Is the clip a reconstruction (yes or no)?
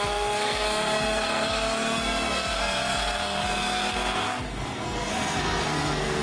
yes